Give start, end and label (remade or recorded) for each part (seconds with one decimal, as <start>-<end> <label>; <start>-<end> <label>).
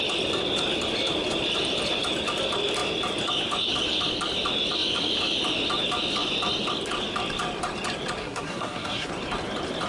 0.0-8.2 recorded; 8.2-9.1 remade; 9.1-9.9 recorded